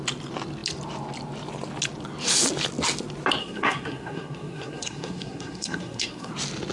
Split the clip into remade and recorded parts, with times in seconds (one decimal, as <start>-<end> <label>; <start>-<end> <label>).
0.0-3.4 recorded; 3.4-6.3 remade; 6.3-6.7 recorded